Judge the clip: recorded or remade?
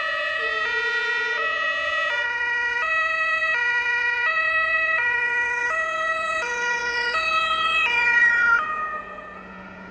remade